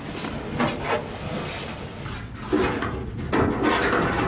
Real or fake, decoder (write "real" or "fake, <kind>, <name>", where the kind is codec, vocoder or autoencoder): real